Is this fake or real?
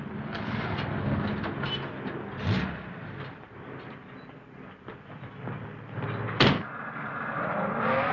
real